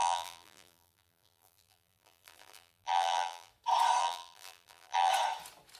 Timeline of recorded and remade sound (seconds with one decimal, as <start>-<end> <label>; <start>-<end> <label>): 0.0-3.5 remade; 3.5-4.0 recorded; 4.0-5.1 remade; 5.1-5.8 recorded

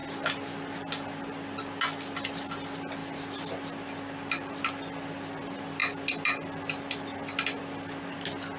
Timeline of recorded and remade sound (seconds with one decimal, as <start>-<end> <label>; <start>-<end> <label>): 0.0-8.6 recorded